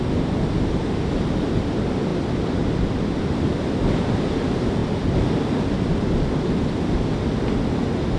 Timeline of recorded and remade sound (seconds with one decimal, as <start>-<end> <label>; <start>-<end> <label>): 0.0-8.2 recorded